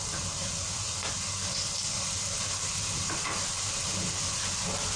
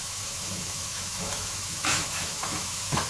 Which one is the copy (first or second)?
second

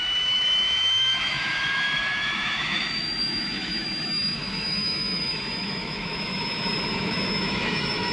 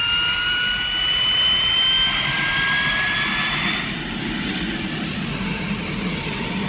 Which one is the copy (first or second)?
first